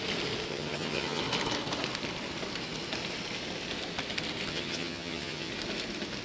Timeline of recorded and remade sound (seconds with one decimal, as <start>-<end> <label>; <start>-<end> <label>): 0.0-0.5 recorded; 0.5-1.2 remade; 1.2-4.5 recorded; 4.5-5.5 remade; 5.5-6.2 recorded